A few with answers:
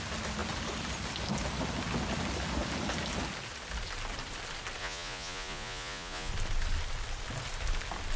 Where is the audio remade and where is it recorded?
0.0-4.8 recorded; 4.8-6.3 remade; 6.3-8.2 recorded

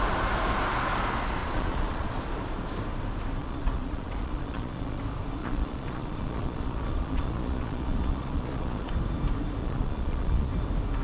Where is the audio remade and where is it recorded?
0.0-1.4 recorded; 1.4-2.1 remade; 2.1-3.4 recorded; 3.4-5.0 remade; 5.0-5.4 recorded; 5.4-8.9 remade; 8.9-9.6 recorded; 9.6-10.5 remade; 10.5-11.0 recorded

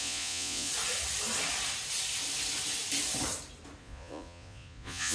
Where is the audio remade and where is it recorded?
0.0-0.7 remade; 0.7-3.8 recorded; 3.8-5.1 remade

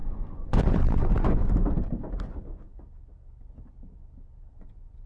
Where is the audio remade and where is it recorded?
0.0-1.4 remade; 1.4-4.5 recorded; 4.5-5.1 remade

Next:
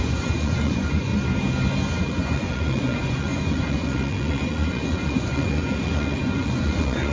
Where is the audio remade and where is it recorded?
0.0-1.1 remade; 1.1-2.0 recorded; 2.0-7.1 remade

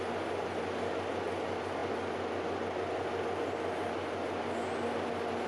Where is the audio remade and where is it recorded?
0.0-5.5 recorded

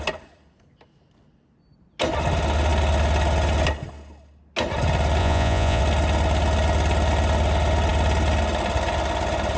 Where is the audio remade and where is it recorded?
0.0-5.2 recorded; 5.2-5.8 remade; 5.8-9.6 recorded